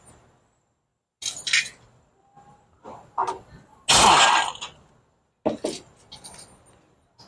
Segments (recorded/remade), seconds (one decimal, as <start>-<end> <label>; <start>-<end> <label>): 0.0-7.3 recorded